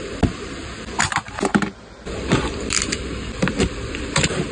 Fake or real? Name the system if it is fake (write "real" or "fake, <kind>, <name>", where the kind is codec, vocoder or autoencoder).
fake, vocoder, BigVGAN v2